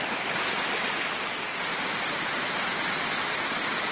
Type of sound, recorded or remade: recorded